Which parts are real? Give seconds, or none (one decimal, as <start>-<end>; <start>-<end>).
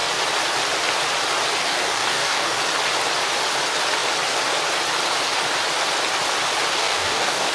0.0-1.6; 2.6-6.8